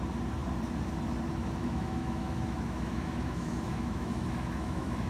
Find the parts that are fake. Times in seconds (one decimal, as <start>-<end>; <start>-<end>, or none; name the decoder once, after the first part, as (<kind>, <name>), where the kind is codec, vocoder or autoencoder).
1.6-5.1 (autoencoder, DAC-VAE)